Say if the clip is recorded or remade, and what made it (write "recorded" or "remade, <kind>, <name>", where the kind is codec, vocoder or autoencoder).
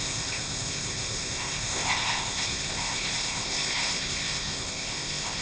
remade, codec, ZipCodec